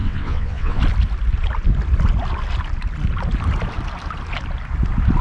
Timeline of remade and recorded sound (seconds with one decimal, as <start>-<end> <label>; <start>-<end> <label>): 0.0-0.8 remade; 0.8-5.2 recorded